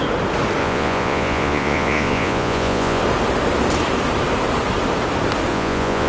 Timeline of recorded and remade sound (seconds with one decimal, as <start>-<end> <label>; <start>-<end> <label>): 0.0-0.6 recorded; 0.6-3.0 remade; 3.0-5.5 recorded; 5.5-6.1 remade